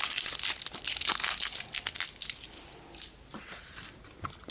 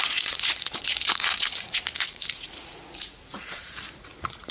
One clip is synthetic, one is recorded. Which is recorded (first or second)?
first